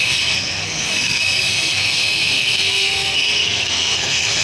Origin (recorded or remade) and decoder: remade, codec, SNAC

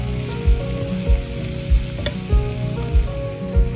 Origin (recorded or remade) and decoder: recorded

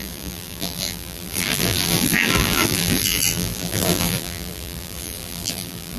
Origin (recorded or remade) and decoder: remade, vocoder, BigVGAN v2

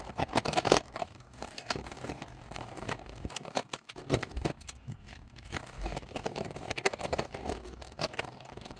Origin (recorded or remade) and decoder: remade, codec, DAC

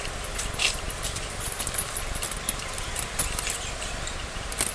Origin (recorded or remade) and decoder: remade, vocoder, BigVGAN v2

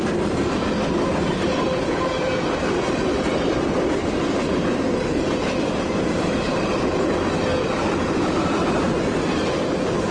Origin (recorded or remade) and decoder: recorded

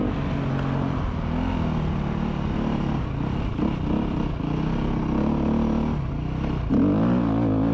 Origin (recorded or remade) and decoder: recorded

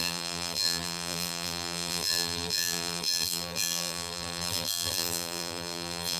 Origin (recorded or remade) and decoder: remade, vocoder, BigVGAN v2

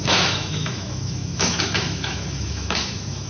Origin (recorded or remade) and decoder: remade, autoencoder, DAC-VAE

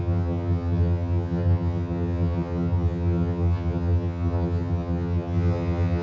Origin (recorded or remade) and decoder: remade, vocoder, HiFi-GAN